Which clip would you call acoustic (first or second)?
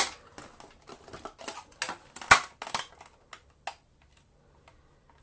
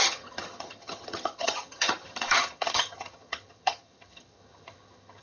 first